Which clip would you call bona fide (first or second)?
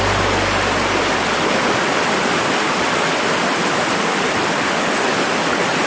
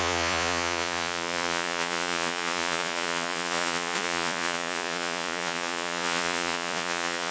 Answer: first